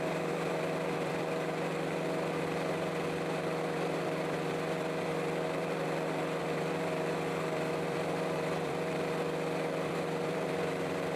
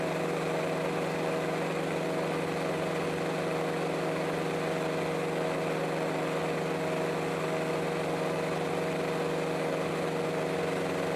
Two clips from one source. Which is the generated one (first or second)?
first